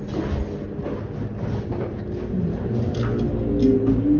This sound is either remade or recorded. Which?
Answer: recorded